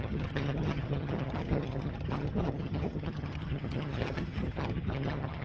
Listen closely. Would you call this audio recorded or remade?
remade